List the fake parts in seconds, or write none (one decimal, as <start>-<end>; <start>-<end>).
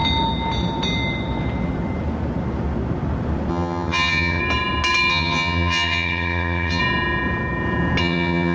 3.5-4.4; 5.1-6.8; 8.0-8.5